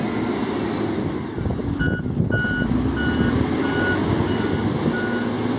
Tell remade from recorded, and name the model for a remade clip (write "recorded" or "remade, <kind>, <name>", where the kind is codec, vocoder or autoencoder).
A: recorded